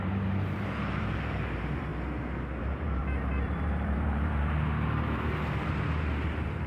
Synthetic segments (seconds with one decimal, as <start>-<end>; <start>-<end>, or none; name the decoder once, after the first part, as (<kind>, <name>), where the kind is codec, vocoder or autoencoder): 0.0-1.9 (vocoder, BigVGAN v2); 2.6-6.7